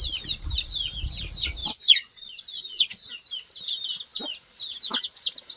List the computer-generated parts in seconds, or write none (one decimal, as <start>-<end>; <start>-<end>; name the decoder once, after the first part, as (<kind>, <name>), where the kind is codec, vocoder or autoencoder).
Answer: 1.6-3.1 (vocoder, Vocos)